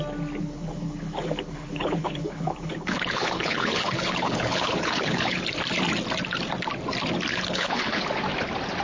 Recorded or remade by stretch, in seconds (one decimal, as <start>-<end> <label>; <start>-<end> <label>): 0.0-0.4 recorded; 0.4-5.4 remade; 5.4-7.3 recorded; 7.3-8.0 remade; 8.0-8.8 recorded